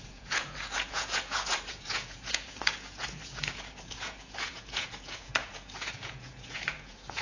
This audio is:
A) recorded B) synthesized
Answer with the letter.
B